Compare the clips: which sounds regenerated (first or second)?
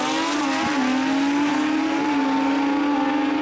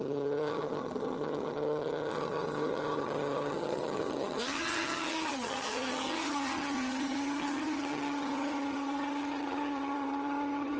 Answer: second